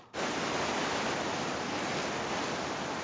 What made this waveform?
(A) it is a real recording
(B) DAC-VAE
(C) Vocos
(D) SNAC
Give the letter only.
A